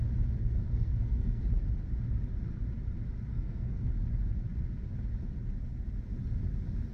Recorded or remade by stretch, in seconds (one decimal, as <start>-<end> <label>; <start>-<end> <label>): 0.0-0.4 recorded; 0.4-1.4 remade; 1.4-3.3 recorded; 3.3-3.9 remade; 3.9-6.9 recorded